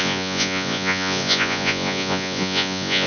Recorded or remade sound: remade